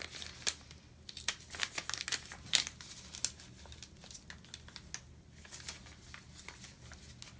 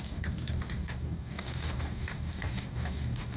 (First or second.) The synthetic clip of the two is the second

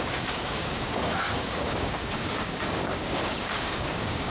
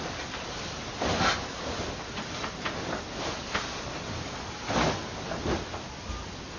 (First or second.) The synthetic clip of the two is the first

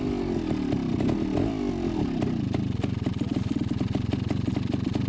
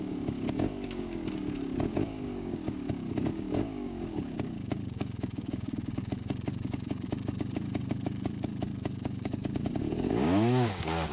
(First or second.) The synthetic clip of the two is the second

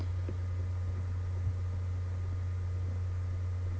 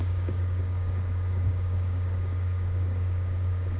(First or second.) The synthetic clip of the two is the second